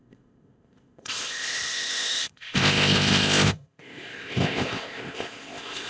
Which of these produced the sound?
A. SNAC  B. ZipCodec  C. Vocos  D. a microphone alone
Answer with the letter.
B